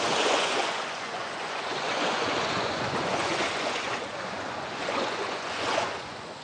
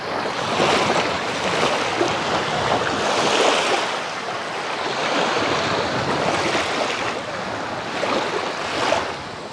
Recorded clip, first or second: second